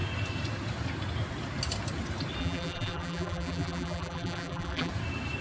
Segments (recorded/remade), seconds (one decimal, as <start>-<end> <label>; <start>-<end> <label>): 0.0-2.4 recorded; 2.4-4.9 remade; 4.9-5.4 recorded

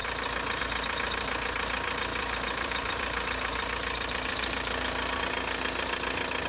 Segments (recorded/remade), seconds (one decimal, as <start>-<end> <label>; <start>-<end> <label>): 0.0-2.1 recorded; 2.1-5.2 remade; 5.2-6.5 recorded

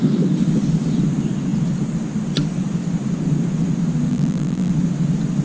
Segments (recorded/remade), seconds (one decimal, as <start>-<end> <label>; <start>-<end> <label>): 0.0-4.1 recorded; 4.1-4.7 remade; 4.7-5.4 recorded

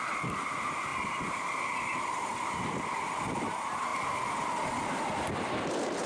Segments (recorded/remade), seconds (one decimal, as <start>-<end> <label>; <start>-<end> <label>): 0.0-6.1 recorded

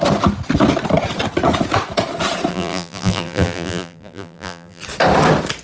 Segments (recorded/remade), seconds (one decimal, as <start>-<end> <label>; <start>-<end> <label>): 0.0-2.5 recorded; 2.5-4.8 remade; 4.8-5.6 recorded

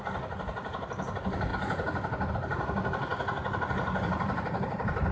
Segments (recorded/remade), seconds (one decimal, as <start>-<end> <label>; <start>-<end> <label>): 0.0-1.5 remade; 1.5-2.3 recorded; 2.3-3.1 remade; 3.1-3.7 recorded; 3.7-5.1 remade

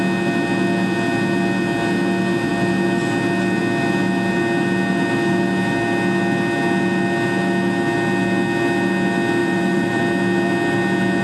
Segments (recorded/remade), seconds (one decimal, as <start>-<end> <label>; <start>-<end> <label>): 0.0-9.4 recorded; 9.4-10.0 remade; 10.0-11.2 recorded

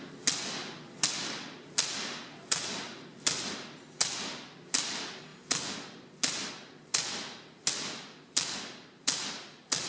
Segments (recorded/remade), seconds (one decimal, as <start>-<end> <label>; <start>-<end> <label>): 0.0-9.9 recorded